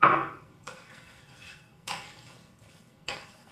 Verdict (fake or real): fake